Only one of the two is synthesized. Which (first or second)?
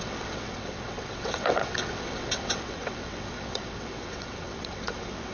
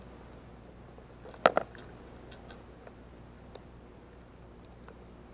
first